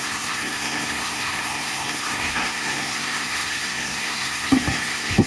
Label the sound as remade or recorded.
remade